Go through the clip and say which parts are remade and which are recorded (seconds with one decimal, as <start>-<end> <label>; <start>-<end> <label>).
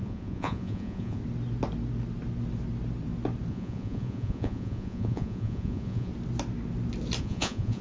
0.0-1.2 remade; 1.2-3.5 recorded; 3.5-6.1 remade; 6.1-7.2 recorded; 7.2-7.8 remade